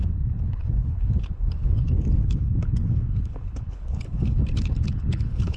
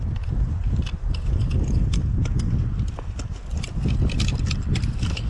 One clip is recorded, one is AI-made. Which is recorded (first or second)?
second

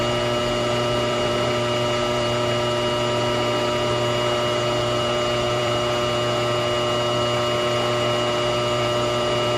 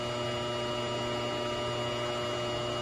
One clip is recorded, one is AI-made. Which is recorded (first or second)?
second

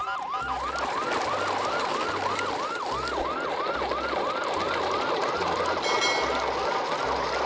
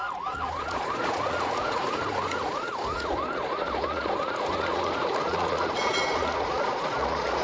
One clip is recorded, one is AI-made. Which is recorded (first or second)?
first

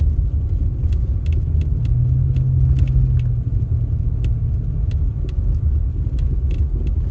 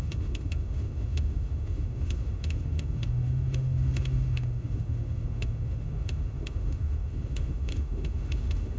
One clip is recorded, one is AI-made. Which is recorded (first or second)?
first